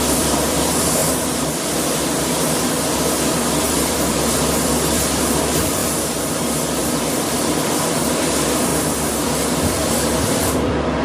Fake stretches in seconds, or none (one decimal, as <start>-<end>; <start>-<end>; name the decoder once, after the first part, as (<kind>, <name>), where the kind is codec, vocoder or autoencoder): 0.0-1.0 (vocoder, BigVGAN v2); 3.7-5.8; 6.7-8.7; 10.3-11.0